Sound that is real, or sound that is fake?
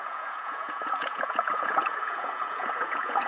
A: fake